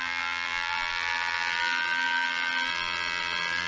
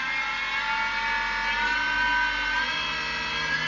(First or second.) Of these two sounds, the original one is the second